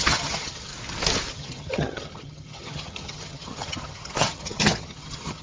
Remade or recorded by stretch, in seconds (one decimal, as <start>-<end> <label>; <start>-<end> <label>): 0.0-0.7 remade; 0.7-1.3 recorded; 1.3-5.4 remade